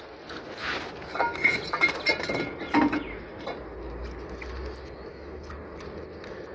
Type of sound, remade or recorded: recorded